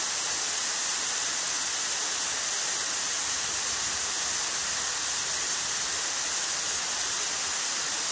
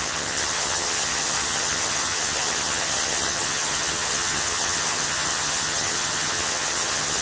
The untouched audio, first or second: first